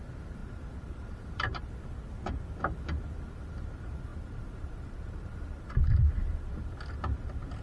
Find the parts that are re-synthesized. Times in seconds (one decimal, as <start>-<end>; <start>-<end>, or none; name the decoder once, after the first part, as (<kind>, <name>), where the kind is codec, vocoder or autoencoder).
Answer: 0.4-1.6 (vocoder, BigVGAN v2); 4.1-6.7